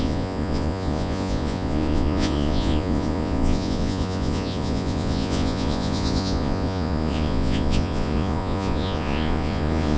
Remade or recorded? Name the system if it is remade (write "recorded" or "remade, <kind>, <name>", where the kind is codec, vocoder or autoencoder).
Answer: remade, vocoder, Vocos